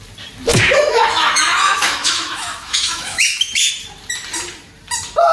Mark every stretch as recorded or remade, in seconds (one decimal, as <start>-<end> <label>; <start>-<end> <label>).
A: 0.0-0.5 recorded; 0.5-3.7 remade; 3.7-5.3 recorded